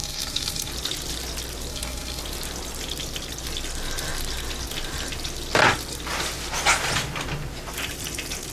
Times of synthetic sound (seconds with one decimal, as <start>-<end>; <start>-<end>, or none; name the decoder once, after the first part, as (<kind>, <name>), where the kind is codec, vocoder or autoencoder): 0.0-0.7 (codec, SNAC); 1.7-2.2